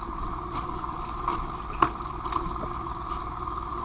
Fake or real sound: real